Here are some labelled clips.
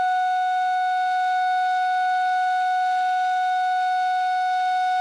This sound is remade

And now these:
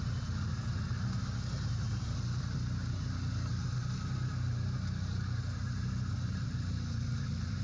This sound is recorded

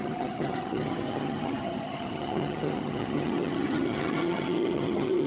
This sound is remade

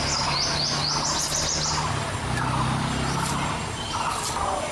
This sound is recorded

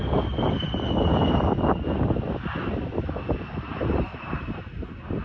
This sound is recorded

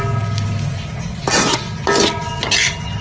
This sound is recorded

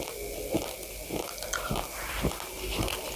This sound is recorded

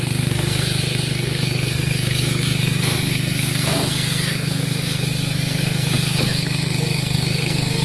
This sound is remade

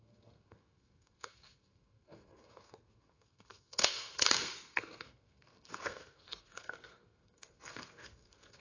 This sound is remade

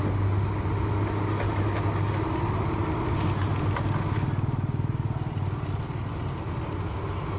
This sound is recorded